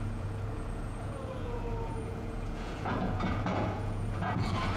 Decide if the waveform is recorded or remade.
remade